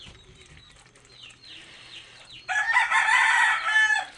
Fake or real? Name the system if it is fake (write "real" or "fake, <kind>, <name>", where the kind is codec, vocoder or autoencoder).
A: real